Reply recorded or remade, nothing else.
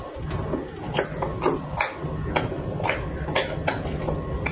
recorded